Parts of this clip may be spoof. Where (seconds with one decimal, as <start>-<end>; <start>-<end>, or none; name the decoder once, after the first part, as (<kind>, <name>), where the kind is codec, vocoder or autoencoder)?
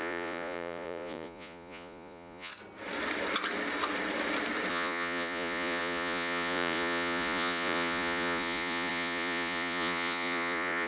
0.0-2.5 (vocoder, Vocos); 4.7-10.9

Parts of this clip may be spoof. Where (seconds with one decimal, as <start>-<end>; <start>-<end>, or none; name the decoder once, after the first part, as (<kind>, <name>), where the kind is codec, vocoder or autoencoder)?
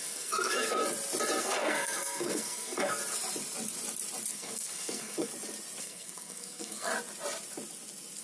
0.0-0.8 (codec, SNAC); 1.4-3.0; 4.3-5.3; 5.8-6.9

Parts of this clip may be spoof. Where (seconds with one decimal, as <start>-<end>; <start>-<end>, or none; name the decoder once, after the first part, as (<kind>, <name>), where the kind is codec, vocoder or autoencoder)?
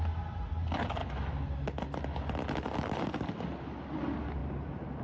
none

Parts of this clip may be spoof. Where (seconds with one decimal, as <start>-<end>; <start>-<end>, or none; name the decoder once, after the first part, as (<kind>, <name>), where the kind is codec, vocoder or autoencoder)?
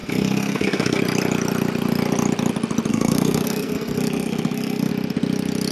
0.0-1.0 (codec, SNAC); 2.9-4.9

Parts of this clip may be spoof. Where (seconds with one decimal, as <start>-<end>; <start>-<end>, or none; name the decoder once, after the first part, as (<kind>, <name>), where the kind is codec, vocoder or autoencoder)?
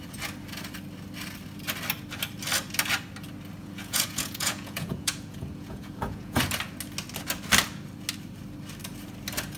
3.6-6.4 (vocoder, Vocos)